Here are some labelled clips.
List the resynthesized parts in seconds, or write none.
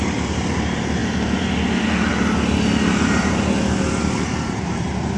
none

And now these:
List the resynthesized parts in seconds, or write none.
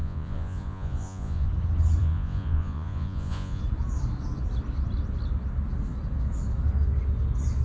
0.0-1.5 (vocoder, Vocos); 2.0-3.6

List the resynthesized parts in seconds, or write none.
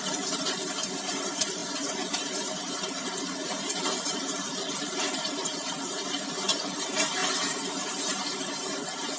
0.0-7.2 (vocoder, BigVGAN v2); 7.8-9.2